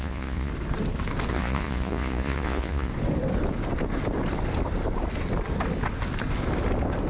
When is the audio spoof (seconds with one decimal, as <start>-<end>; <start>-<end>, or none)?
0.0-0.5; 1.3-2.9